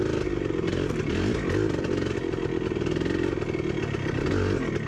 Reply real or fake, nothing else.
real